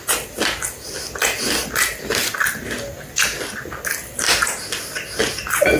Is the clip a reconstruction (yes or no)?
no